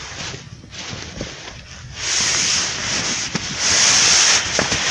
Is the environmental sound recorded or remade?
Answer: recorded